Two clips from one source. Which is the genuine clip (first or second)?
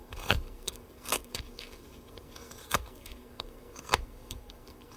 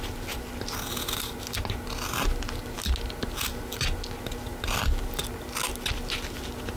second